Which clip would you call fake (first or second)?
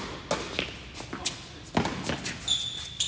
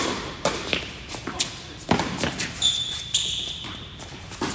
second